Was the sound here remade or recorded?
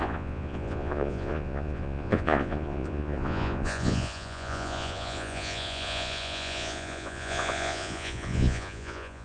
remade